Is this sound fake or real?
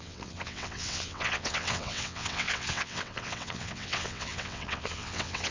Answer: fake